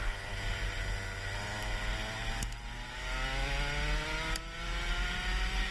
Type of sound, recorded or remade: recorded